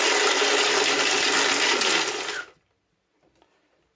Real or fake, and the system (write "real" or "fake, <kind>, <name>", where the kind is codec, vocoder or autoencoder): real